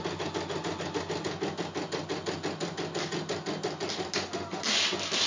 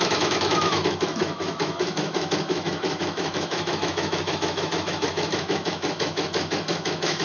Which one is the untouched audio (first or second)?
first